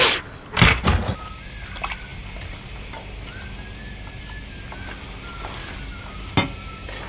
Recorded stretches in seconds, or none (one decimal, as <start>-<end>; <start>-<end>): 0.0-7.1